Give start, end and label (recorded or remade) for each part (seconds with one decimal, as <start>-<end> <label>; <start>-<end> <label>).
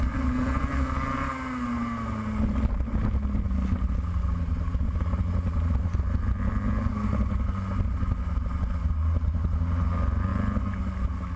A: 0.0-11.4 recorded